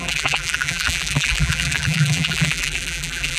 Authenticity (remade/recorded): remade